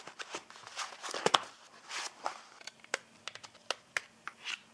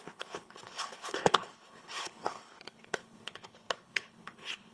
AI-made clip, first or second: second